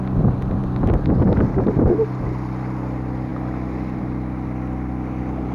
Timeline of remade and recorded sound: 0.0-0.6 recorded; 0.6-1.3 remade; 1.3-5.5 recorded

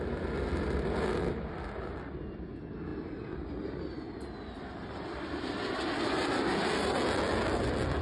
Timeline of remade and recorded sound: 0.0-8.0 recorded

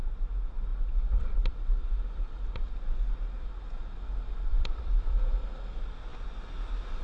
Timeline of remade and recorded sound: 0.0-4.5 recorded; 4.5-5.1 remade; 5.1-7.0 recorded

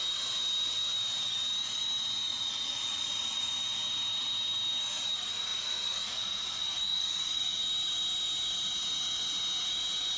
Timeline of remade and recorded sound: 0.0-2.3 recorded; 2.3-3.5 remade; 3.5-5.5 recorded; 5.5-7.6 remade; 7.6-10.2 recorded

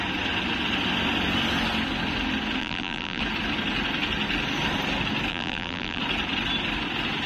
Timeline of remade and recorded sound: 0.0-2.6 recorded; 2.6-3.2 remade; 3.2-5.3 recorded; 5.3-6.0 remade; 6.0-7.3 recorded

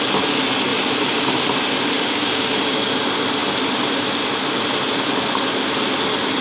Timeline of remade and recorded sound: 0.0-6.4 recorded

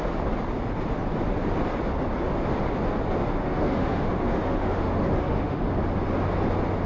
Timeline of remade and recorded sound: 0.0-3.4 recorded; 3.4-5.7 remade; 5.7-6.9 recorded